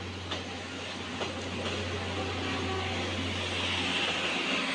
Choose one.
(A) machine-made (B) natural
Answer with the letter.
B